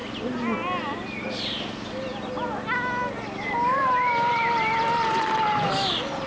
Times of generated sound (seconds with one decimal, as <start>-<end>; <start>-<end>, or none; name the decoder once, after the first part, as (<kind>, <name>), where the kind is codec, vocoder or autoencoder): none